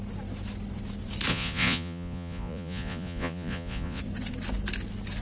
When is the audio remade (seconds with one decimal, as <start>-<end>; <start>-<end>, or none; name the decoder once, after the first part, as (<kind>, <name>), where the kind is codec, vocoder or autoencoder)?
1.3-4.0 (vocoder, Vocos)